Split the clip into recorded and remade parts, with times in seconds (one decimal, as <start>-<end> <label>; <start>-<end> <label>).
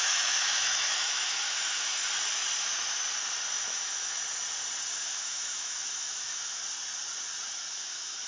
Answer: 0.0-2.0 remade; 2.0-3.6 recorded; 3.6-4.2 remade; 4.2-5.0 recorded; 5.0-6.6 remade; 6.6-7.7 recorded; 7.7-8.3 remade